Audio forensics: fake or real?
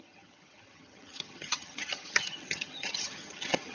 fake